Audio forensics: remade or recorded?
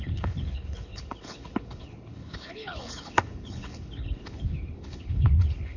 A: remade